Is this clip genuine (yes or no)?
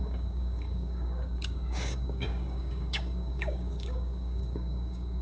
no